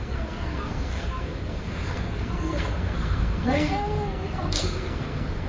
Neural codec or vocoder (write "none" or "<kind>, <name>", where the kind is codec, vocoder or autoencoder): codec, SNAC